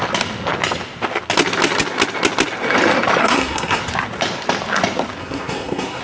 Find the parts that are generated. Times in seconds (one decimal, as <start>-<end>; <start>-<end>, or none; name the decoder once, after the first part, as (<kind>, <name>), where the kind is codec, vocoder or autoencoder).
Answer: 3.2-3.8 (codec, SNAC); 5.2-6.0

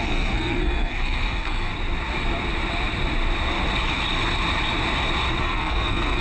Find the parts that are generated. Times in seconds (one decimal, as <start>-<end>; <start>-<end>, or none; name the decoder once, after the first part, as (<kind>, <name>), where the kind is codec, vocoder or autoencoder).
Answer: 0.0-1.7 (codec, SNAC); 5.4-6.2

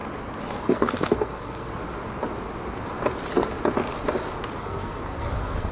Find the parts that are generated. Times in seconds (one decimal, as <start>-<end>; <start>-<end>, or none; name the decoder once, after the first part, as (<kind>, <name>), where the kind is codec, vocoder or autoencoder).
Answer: 0.6-1.7 (codec, SNAC); 4.6-5.7